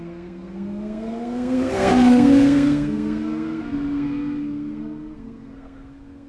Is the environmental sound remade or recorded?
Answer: remade